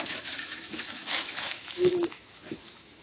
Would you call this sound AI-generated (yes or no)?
yes